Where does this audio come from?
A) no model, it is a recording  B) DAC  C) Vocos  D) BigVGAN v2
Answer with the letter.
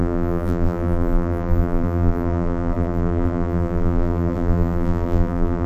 D